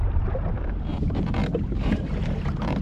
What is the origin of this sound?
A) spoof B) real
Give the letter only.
A